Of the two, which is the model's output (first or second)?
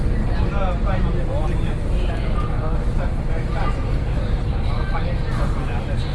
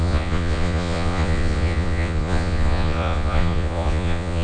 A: second